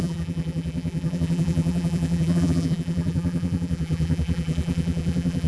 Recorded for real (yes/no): no